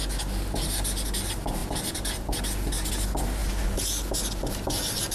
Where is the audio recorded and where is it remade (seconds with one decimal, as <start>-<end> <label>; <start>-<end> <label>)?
0.0-5.1 recorded